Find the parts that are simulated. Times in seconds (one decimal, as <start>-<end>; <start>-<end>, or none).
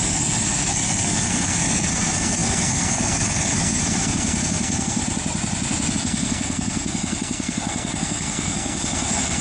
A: 0.0-5.0; 5.9-9.4